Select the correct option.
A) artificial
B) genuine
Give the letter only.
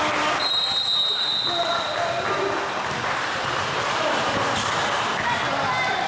B